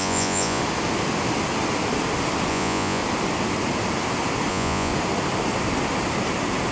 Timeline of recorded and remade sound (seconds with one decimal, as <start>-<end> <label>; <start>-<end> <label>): 0.0-0.6 remade; 0.6-2.5 recorded; 2.5-3.0 remade; 3.0-4.5 recorded; 4.5-4.9 remade; 4.9-6.7 recorded